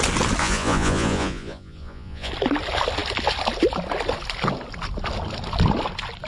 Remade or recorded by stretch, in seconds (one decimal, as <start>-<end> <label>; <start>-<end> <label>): 0.0-0.4 recorded; 0.4-2.3 remade; 2.3-6.3 recorded